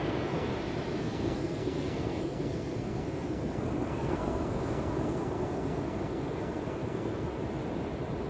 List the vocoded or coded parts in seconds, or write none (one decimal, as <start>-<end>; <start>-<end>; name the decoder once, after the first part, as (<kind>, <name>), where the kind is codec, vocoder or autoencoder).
0.0-0.5 (codec, SNAC); 1.0-7.4